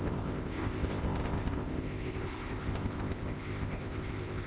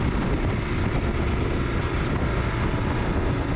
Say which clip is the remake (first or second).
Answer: first